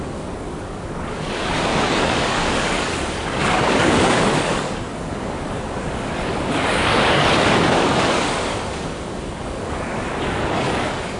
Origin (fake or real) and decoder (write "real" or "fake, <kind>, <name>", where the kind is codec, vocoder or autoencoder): fake, codec, DAC